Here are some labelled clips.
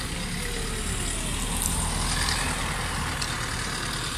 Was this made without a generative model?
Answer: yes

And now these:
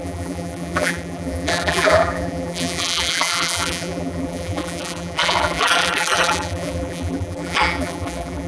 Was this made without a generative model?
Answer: no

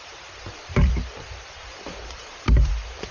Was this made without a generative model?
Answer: no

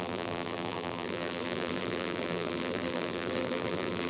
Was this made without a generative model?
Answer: no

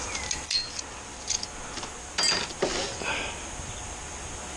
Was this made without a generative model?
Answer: yes